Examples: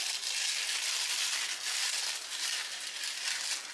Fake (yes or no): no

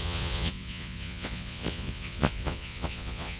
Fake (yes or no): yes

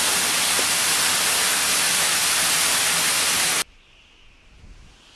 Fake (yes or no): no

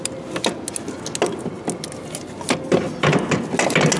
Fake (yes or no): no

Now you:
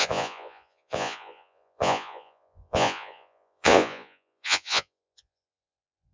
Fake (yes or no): yes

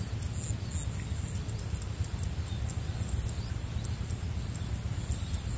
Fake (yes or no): no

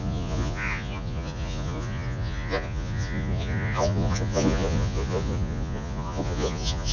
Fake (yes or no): yes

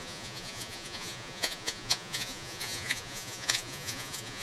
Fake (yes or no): yes